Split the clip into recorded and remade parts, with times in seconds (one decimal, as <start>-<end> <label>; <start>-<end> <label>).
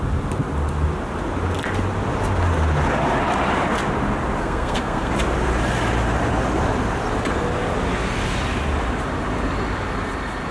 0.0-4.4 recorded; 4.4-5.1 remade; 5.1-10.5 recorded